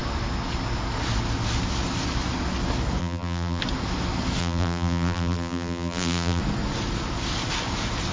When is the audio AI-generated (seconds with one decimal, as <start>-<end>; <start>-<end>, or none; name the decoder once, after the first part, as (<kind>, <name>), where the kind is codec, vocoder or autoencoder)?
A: 3.0-3.6 (vocoder, BigVGAN v2); 4.4-6.4